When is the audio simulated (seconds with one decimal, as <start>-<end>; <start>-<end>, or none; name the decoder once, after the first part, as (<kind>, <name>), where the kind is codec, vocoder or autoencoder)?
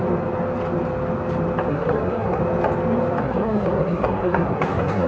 1.7-2.4 (codec, SNAC); 3.2-5.1